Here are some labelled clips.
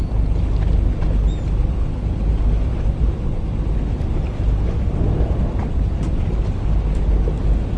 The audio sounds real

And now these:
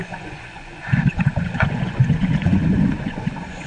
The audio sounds fake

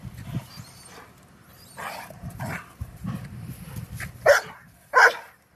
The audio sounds fake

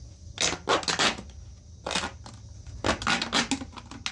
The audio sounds real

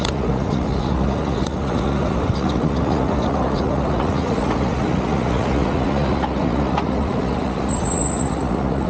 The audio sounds fake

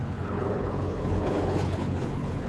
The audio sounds fake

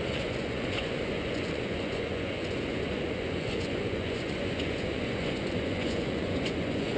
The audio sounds fake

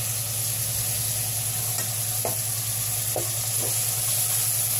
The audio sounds real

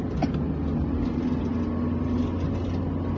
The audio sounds real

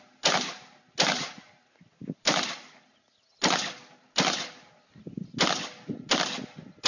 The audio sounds real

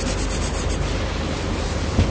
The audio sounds real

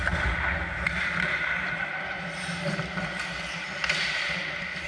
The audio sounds fake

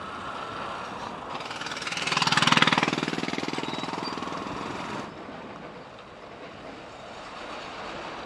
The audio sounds real